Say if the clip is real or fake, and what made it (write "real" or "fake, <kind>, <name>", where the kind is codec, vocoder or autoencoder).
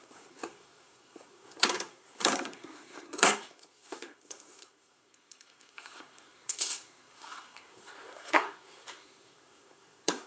fake, codec, SNAC